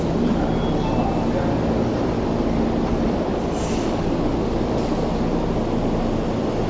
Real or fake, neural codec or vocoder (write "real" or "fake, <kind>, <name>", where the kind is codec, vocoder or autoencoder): real